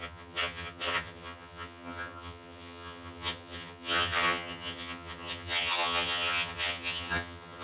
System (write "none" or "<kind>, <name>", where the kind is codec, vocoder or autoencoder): vocoder, HiFi-GAN